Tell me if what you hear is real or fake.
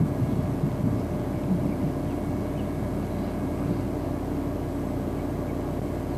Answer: real